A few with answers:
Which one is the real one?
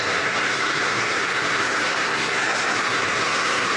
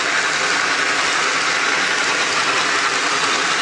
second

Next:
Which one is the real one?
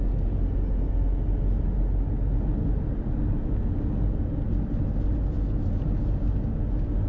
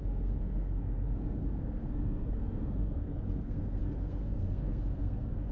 first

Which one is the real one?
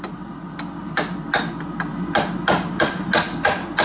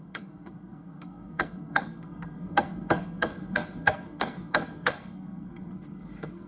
first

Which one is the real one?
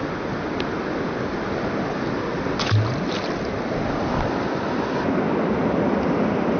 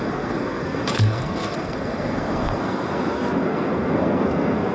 first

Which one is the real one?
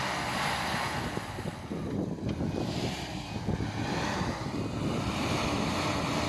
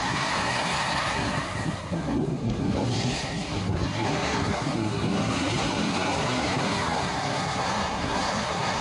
first